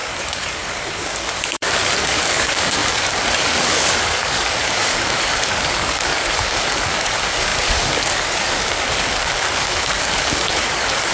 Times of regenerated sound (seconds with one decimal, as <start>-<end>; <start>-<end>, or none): 0.0-11.1